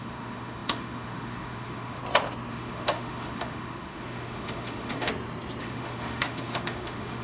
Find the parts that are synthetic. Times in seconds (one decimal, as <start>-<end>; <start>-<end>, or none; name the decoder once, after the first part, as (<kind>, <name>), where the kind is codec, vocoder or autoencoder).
0.0-2.0 (autoencoder, DAC-VAE); 2.5-5.1; 5.6-7.2